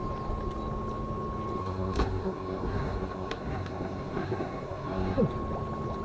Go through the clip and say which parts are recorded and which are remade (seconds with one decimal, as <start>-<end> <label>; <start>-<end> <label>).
0.0-1.6 recorded; 1.6-5.2 remade; 5.2-6.0 recorded